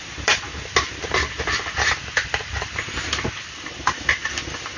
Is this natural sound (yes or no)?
yes